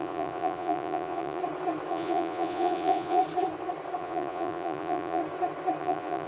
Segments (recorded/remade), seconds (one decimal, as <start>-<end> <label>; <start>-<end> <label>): 0.0-1.4 remade; 1.4-1.9 recorded; 1.9-3.2 remade; 3.2-4.0 recorded; 4.0-5.2 remade; 5.2-5.8 recorded; 5.8-6.3 remade